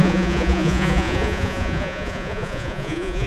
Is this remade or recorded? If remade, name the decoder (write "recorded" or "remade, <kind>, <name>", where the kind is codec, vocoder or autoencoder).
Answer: remade, vocoder, Vocos